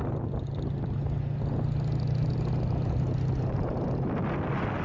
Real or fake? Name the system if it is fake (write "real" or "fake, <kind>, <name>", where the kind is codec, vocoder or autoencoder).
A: real